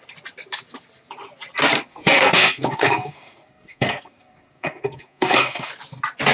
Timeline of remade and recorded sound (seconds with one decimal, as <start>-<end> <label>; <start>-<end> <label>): 0.0-1.9 recorded; 1.9-5.7 remade; 5.7-6.3 recorded